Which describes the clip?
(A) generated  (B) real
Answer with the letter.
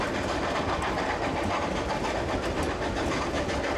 B